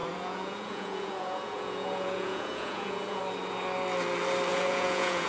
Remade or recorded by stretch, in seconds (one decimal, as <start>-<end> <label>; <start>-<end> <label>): 0.0-3.2 remade; 3.2-4.5 recorded; 4.5-5.3 remade